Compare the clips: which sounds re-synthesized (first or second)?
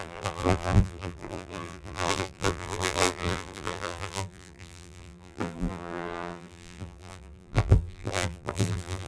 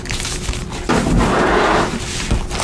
first